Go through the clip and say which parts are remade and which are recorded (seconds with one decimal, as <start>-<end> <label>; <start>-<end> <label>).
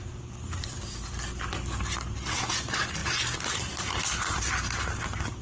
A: 0.0-5.4 recorded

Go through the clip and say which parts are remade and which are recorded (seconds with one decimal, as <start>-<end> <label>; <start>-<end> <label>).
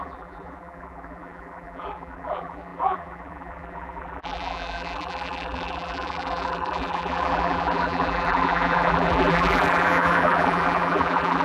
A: 0.0-11.4 remade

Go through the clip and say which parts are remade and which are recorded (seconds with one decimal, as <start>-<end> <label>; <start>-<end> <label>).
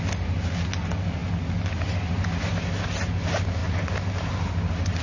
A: 0.0-5.0 recorded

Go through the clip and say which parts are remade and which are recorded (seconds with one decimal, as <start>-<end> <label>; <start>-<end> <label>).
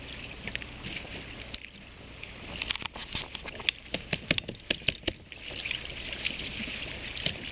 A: 0.0-7.5 recorded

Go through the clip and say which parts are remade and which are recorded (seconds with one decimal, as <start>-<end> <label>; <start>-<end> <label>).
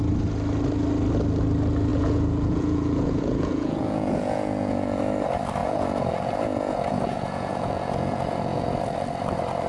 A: 0.0-1.9 recorded; 1.9-5.0 remade; 5.0-5.6 recorded; 5.6-8.6 remade; 8.6-9.7 recorded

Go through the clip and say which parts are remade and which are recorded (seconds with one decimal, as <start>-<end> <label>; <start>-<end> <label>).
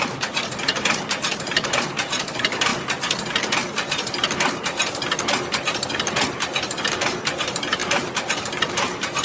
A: 0.0-2.7 remade; 2.7-6.8 recorded; 6.8-9.2 remade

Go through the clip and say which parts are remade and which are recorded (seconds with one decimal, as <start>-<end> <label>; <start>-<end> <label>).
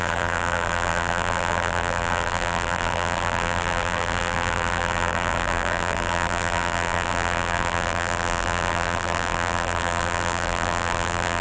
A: 0.0-11.4 remade